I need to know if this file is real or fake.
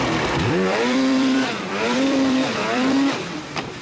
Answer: fake